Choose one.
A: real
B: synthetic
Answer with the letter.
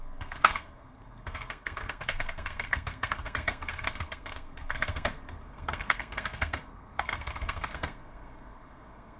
B